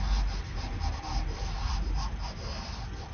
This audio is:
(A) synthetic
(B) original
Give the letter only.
B